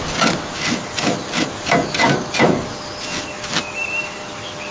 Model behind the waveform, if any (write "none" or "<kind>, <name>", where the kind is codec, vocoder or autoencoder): vocoder, BigVGAN v2